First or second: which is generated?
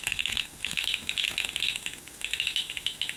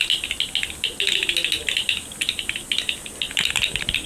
first